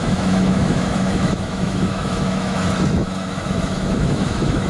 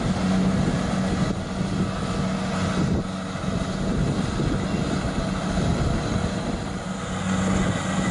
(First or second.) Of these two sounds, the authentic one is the second